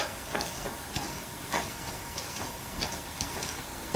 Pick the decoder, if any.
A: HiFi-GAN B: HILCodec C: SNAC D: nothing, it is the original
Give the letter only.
C